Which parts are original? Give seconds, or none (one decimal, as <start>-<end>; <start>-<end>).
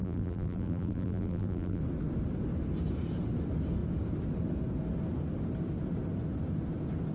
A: 1.8-7.1